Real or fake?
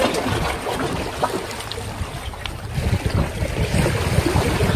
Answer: real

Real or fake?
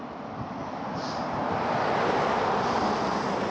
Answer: real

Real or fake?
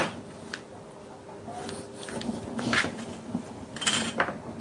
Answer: real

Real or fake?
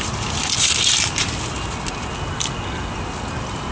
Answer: real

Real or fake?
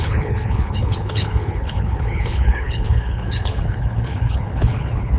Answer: fake